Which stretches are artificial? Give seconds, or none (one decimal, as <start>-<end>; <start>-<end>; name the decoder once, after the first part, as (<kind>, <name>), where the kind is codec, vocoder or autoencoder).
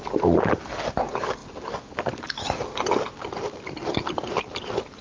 none